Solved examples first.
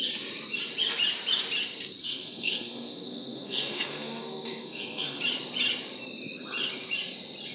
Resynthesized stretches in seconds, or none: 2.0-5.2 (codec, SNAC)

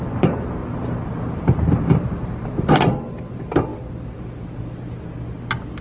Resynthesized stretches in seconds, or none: 0.6-3.3 (vocoder, BigVGAN v2); 3.7-4.6

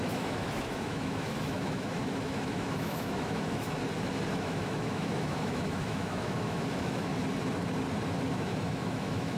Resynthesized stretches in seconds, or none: 0.0-3.8 (autoencoder, DAC-VAE); 4.3-7.1; 8.3-9.4

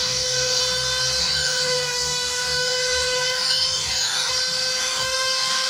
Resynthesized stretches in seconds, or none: 0.0-0.6 (codec, DAC); 1.2-4.3; 4.8-5.7

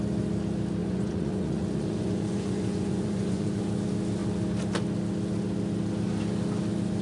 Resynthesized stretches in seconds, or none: 0.8-3.6 (vocoder, Vocos)

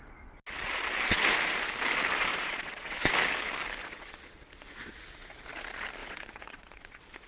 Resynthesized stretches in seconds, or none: 2.3-3.1 (vocoder, Vocos); 3.8-5.0; 6.0-7.3

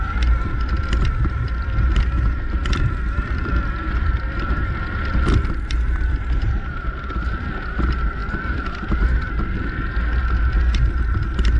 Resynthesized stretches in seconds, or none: 2.6-5.1 (vocoder, BigVGAN v2)